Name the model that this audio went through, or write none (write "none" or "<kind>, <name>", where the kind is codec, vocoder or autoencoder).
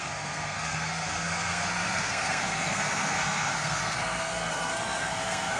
codec, SNAC